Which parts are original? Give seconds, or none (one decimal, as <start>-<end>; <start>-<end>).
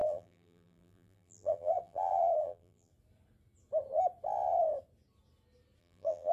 2.9-5.8